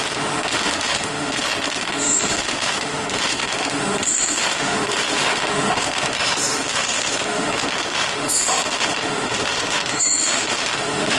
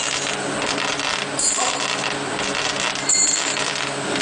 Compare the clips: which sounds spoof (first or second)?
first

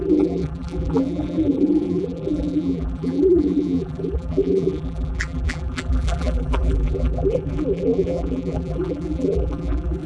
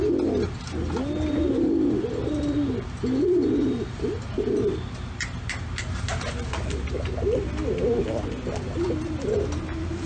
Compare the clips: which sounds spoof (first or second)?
first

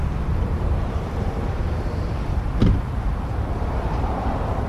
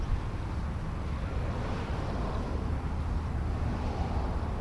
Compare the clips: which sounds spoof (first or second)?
first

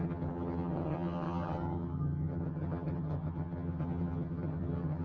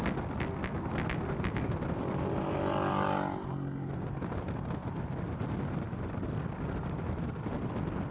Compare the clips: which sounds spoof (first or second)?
first